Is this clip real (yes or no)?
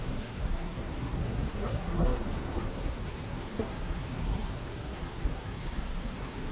no